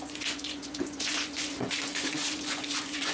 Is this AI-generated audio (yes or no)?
yes